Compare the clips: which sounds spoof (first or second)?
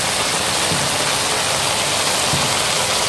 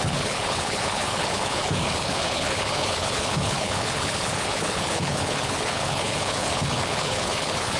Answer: second